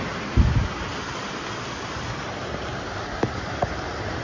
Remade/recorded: recorded